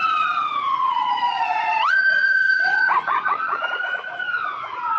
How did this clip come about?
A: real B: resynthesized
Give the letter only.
B